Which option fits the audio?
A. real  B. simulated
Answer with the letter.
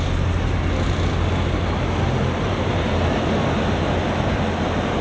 A